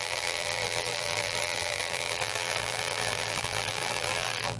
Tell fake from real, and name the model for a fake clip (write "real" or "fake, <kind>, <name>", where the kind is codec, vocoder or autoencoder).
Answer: fake, vocoder, BigVGAN v2